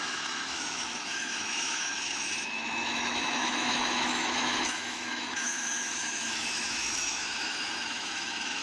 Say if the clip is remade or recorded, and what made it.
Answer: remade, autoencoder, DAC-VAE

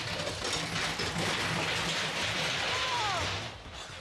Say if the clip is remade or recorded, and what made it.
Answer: recorded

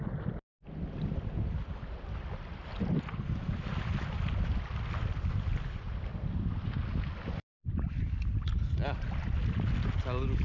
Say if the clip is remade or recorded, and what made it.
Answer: recorded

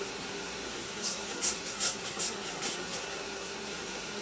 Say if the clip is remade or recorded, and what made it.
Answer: remade, codec, SNAC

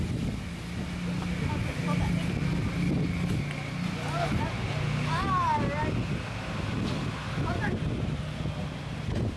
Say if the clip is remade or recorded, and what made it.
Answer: recorded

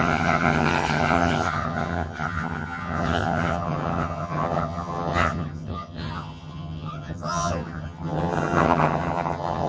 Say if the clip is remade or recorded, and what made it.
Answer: remade, vocoder, HiFi-GAN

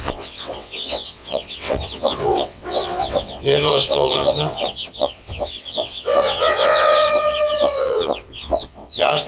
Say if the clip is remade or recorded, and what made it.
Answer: remade, vocoder, WaveNeXt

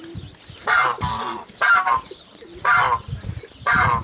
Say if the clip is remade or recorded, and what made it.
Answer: recorded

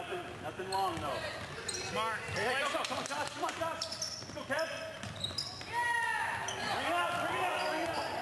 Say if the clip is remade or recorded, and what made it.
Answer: recorded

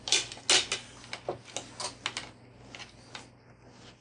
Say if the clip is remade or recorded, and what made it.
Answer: recorded